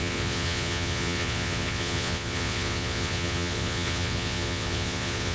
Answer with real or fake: fake